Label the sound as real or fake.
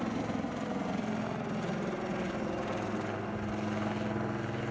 real